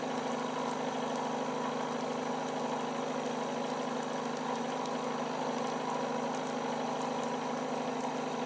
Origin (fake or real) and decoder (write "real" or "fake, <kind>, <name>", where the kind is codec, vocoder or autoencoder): real